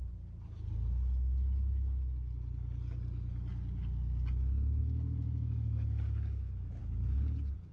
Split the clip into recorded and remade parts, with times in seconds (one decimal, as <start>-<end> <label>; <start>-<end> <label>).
0.0-4.8 recorded; 4.8-6.8 remade; 6.8-7.7 recorded